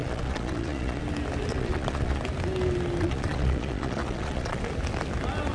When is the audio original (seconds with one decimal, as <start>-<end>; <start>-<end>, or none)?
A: 1.0-1.5; 2.2-3.0; 4.6-5.5